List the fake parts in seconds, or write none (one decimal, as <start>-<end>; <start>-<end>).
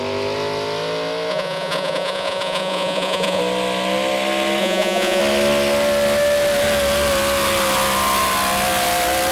1.3-3.4; 4.6-5.2